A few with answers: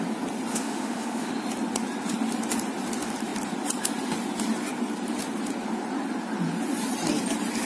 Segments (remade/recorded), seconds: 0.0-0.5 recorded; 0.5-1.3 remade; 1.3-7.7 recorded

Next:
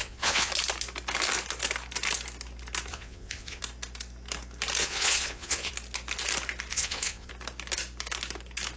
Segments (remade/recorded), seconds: 0.0-0.5 remade; 0.5-2.9 recorded; 2.9-3.6 remade; 3.6-4.8 recorded; 4.8-5.7 remade; 5.7-6.7 recorded; 6.7-7.3 remade; 7.3-8.8 recorded

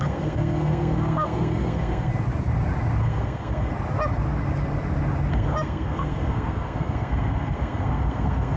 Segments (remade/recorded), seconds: 0.0-2.1 remade; 2.1-3.0 recorded; 3.0-3.7 remade; 3.7-5.3 recorded; 5.3-8.6 remade

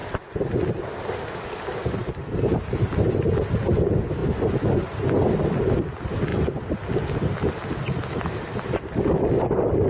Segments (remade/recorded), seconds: 0.0-9.9 recorded